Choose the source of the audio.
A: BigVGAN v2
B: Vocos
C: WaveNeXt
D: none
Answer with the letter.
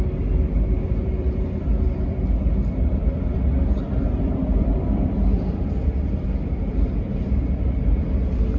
A